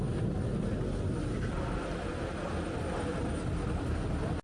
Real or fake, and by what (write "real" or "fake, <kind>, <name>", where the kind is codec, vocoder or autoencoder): real